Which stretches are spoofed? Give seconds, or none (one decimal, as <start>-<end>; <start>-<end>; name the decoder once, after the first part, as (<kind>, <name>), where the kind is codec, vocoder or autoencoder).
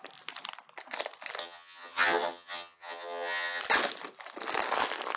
1.4-3.6 (vocoder, HiFi-GAN)